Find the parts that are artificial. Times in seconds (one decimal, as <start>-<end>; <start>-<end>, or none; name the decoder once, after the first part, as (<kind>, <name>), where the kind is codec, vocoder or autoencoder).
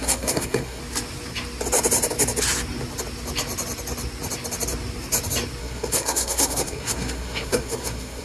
0.0-0.8 (codec, SNAC); 5.6-8.2